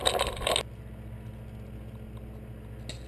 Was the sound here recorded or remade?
recorded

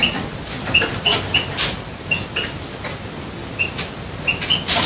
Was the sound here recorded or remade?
recorded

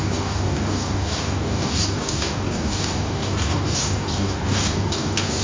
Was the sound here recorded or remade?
remade